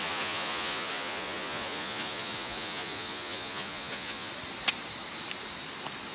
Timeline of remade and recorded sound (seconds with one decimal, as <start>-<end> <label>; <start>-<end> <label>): 0.0-4.3 remade; 4.3-6.1 recorded

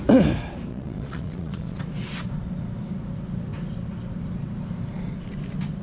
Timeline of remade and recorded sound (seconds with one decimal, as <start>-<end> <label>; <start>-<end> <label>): 0.0-0.7 recorded; 0.7-1.8 remade; 1.8-5.8 recorded

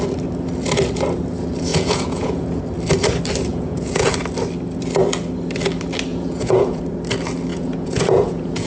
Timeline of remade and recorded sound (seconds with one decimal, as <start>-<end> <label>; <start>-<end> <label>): 0.0-1.7 recorded; 1.7-2.6 remade; 2.6-3.5 recorded; 3.5-4.1 remade; 4.1-6.1 recorded; 6.1-6.8 remade; 6.8-7.5 recorded; 7.5-8.7 remade

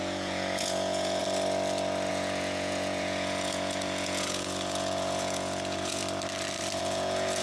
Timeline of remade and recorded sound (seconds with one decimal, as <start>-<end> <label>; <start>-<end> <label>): 0.0-1.2 remade; 1.2-2.1 recorded; 2.1-6.0 remade; 6.0-6.8 recorded; 6.8-7.4 remade

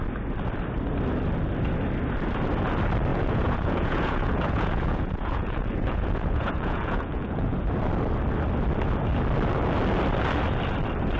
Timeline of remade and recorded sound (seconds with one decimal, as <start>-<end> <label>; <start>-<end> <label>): 0.0-3.1 recorded; 3.1-7.6 remade; 7.6-11.2 recorded

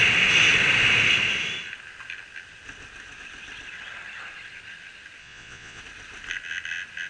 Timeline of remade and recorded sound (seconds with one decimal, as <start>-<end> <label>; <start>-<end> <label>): 0.0-5.2 recorded; 5.2-5.8 remade; 5.8-7.1 recorded